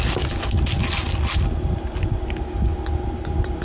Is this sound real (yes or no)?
yes